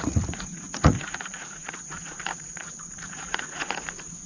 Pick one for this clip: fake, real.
fake